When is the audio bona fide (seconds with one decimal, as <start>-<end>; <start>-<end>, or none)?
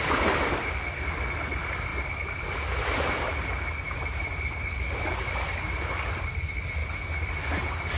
0.0-8.0